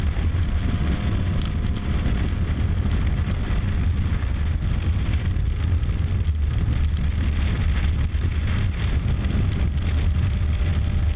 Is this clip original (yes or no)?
yes